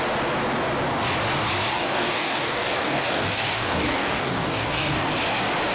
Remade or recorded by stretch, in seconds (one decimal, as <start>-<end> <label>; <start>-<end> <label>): 0.0-1.7 recorded; 1.7-5.1 remade; 5.1-5.7 recorded